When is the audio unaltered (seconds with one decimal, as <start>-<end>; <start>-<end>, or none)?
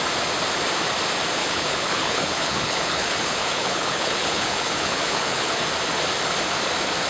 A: 0.0-1.4; 5.5-7.1